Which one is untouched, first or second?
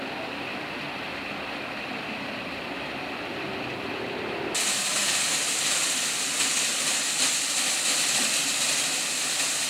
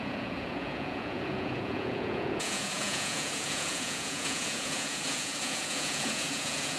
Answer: first